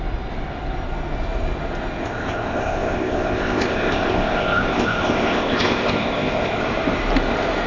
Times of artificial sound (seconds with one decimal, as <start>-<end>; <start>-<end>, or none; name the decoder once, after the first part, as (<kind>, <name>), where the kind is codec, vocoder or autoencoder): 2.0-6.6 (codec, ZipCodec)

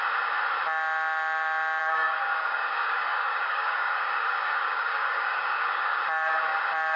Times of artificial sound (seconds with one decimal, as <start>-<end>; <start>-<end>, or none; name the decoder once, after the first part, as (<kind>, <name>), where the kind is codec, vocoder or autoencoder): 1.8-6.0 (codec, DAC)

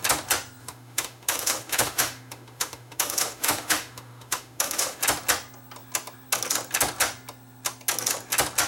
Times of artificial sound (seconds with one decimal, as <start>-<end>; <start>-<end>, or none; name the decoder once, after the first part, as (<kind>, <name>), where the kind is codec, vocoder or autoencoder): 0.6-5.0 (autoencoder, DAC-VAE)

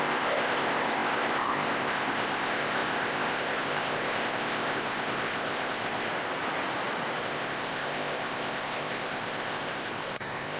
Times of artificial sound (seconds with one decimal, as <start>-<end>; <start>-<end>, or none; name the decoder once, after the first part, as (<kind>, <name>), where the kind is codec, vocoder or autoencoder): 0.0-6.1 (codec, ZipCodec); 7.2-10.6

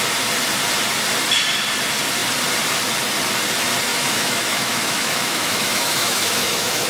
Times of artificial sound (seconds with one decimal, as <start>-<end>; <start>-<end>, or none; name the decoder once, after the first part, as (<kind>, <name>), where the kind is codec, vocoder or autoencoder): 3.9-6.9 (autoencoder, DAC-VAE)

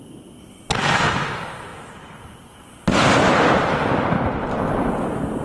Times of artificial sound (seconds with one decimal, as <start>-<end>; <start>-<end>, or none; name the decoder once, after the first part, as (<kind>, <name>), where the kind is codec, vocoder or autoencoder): none